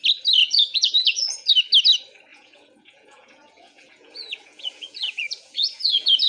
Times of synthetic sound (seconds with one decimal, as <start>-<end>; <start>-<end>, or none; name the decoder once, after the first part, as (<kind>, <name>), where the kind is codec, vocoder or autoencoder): 0.4-1.5 (vocoder, Vocos); 2.3-6.3